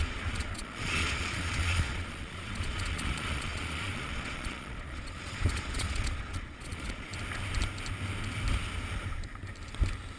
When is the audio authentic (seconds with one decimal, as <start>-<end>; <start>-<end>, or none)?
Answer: 7.1-10.2